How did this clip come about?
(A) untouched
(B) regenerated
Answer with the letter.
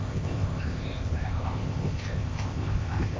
B